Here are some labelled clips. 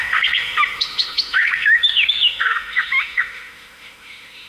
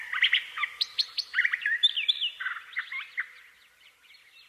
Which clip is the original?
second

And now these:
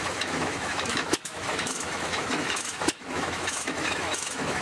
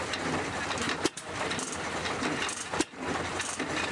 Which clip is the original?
second